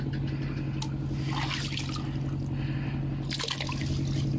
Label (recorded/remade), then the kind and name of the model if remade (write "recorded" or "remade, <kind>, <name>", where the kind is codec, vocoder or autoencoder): recorded